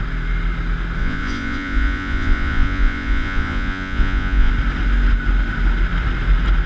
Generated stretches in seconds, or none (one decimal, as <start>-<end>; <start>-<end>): 1.0-4.5